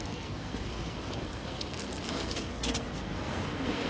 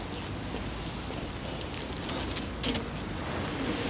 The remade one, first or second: first